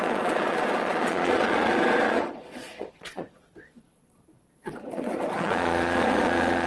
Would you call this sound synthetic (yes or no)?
yes